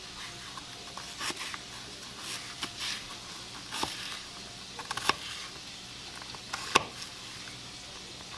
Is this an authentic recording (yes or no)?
yes